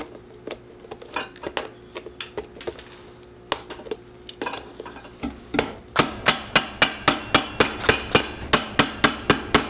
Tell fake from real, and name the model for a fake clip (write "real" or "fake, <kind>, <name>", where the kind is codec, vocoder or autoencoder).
real